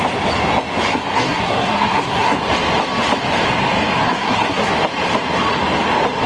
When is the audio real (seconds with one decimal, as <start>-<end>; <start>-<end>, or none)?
0.0-0.9; 2.4-4.0; 4.7-6.3